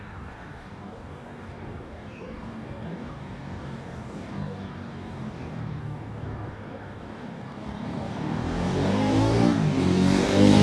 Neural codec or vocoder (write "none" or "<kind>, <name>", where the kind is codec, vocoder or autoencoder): codec, DAC